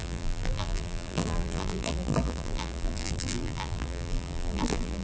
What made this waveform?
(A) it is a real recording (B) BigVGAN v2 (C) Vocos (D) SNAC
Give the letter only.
B